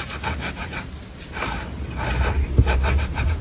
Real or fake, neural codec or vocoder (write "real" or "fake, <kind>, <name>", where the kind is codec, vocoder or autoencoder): fake, vocoder, BigVGAN v2